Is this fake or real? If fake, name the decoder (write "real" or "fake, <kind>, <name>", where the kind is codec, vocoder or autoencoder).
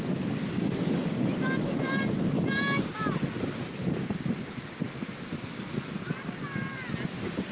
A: real